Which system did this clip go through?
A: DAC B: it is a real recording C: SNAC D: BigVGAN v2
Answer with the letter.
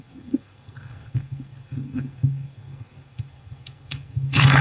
C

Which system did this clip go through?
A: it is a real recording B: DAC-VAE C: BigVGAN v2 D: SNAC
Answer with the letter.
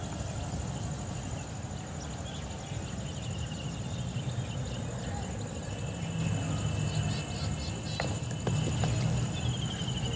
A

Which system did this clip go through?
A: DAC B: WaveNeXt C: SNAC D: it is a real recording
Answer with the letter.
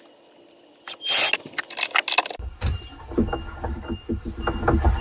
D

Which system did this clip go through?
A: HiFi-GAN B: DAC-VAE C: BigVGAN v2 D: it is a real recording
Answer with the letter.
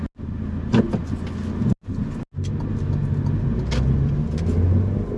D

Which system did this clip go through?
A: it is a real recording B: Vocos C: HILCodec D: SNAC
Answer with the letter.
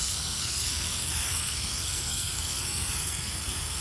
D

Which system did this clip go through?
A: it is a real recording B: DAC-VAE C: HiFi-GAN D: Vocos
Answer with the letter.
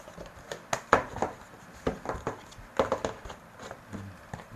A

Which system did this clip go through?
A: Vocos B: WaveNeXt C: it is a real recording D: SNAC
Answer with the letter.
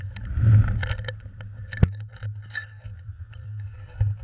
C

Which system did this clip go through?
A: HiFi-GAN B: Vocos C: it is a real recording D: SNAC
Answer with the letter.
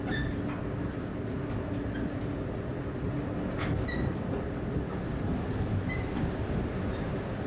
C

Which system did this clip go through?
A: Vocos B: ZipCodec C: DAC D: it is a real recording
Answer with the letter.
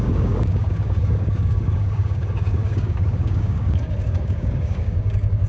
C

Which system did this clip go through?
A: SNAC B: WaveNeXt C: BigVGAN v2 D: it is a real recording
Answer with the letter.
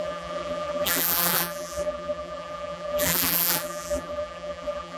C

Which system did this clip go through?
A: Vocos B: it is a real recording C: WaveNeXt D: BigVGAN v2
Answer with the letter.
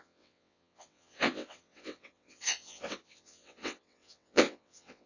C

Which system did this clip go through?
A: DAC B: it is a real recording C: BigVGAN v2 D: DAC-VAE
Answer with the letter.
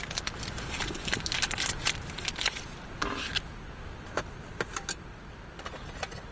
B